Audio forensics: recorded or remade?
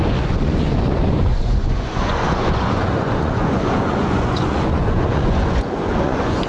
remade